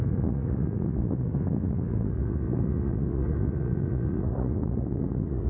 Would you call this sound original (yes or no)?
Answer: no